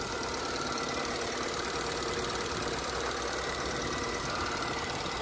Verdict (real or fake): fake